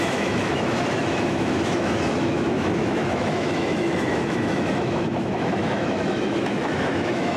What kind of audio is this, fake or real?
fake